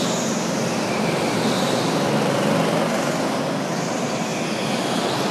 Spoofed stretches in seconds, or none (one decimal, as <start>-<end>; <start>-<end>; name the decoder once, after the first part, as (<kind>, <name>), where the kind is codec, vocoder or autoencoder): 4.3-5.3 (vocoder, BigVGAN v2)